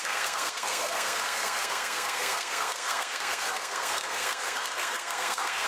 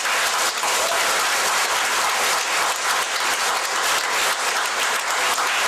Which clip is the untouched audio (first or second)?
second